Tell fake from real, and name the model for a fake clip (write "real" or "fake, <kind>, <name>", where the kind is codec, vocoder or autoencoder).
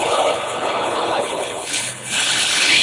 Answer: fake, codec, HILCodec